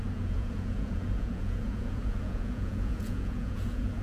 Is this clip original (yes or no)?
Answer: no